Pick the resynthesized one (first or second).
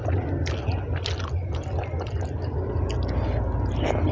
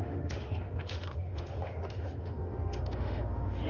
second